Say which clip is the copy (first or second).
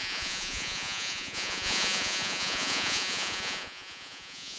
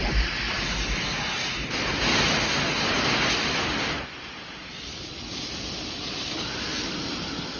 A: first